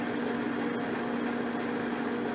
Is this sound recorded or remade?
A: recorded